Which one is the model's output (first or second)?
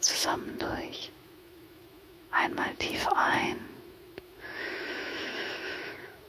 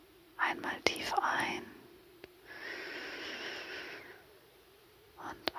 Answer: first